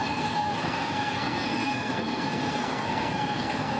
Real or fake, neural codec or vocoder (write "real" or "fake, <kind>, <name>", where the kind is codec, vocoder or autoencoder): fake, codec, SNAC